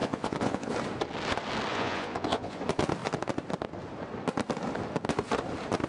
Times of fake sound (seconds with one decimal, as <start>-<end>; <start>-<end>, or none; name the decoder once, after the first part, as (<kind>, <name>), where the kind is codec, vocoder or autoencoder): 0.0-0.7 (vocoder, Vocos); 1.7-2.6